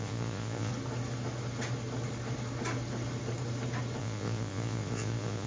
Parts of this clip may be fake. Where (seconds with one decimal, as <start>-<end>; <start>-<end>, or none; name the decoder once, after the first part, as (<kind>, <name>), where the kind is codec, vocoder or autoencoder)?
0.0-0.7 (vocoder, Vocos); 4.0-5.5